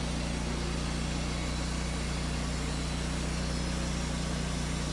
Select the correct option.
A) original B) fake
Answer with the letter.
A